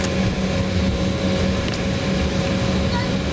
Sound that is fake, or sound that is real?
real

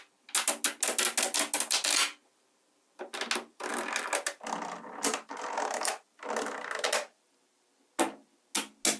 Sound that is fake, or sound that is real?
real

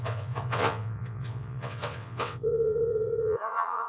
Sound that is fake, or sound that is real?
fake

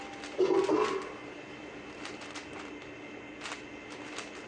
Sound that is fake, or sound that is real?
real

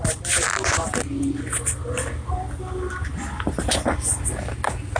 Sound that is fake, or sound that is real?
real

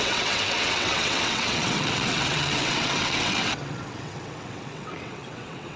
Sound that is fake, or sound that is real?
fake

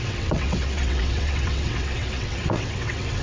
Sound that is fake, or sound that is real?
fake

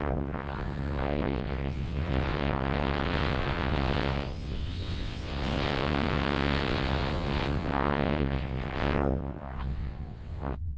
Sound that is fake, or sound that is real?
fake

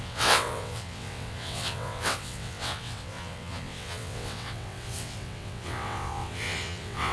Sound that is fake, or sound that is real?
fake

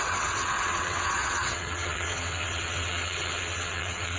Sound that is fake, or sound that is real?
fake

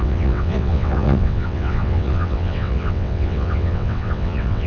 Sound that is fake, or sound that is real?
fake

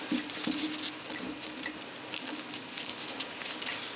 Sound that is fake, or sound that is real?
real